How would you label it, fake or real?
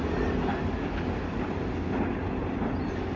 real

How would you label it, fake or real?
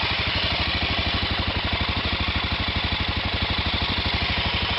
real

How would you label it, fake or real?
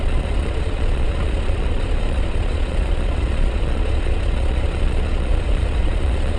fake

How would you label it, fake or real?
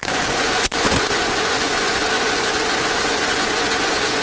fake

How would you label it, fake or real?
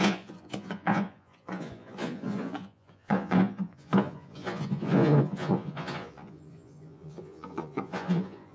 fake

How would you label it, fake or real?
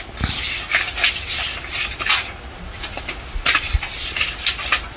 real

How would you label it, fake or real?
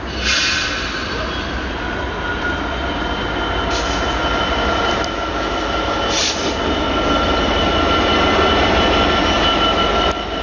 real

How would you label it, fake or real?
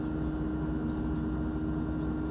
real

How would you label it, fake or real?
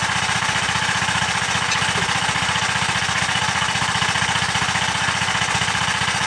real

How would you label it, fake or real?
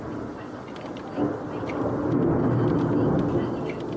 real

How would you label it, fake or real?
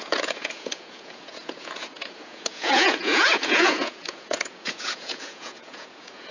fake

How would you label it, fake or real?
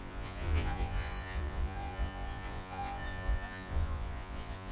fake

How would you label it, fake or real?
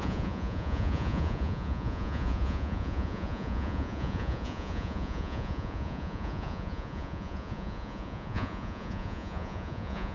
fake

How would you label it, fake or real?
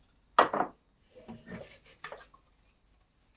real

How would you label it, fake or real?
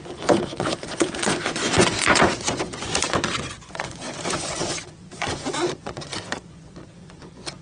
fake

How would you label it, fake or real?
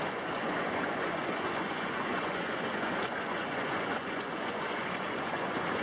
fake